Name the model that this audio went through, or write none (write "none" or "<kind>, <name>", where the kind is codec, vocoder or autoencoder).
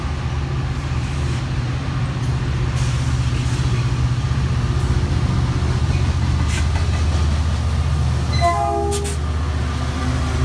none